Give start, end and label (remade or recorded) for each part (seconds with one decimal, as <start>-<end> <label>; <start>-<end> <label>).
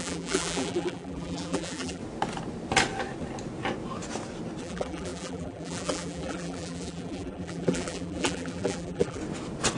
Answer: 0.0-2.0 remade; 2.0-4.6 recorded; 4.6-9.2 remade; 9.2-9.8 recorded